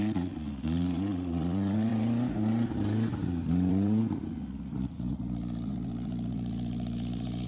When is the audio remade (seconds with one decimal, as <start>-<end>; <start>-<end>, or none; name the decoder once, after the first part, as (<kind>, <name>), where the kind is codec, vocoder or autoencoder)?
0.0-1.9 (vocoder, Vocos); 3.7-7.5